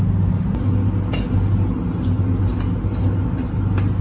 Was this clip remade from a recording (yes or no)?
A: no